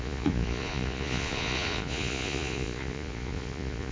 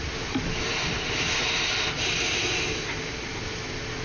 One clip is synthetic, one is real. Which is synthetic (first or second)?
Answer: first